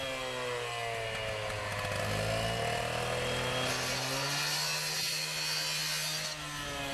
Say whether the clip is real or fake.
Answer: real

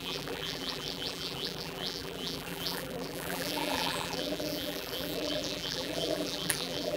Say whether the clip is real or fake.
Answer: fake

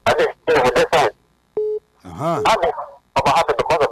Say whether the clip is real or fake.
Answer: real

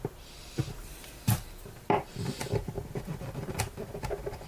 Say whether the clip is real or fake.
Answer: fake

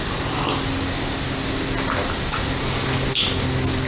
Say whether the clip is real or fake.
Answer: real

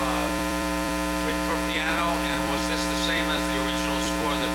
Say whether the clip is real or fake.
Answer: fake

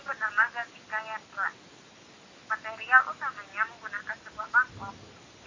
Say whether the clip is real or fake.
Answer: real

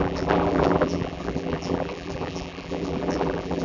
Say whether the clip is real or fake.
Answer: fake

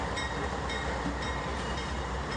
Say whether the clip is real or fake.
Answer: fake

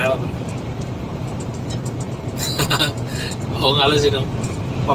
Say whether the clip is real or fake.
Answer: real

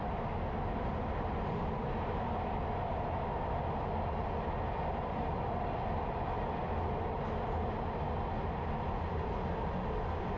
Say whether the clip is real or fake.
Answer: real